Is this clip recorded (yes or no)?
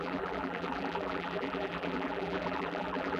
no